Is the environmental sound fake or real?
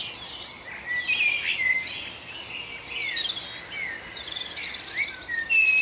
real